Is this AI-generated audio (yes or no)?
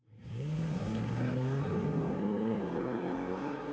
yes